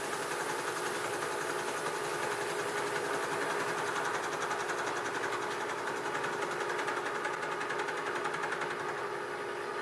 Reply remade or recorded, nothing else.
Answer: recorded